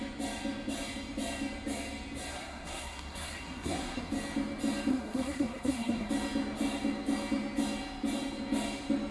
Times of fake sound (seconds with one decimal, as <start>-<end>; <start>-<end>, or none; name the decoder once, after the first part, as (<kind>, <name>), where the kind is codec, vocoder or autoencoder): 2.3-4.1 (codec, SNAC); 4.9-6.1